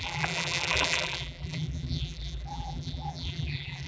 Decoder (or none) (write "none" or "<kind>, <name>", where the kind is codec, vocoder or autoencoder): vocoder, BigVGAN v2